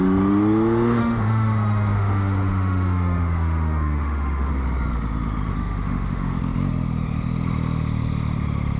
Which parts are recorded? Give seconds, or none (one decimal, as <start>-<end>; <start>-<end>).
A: 0.0-1.0; 4.5-5.5; 6.4-8.8